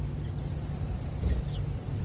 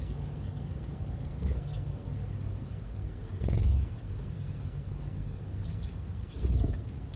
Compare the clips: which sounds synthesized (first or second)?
second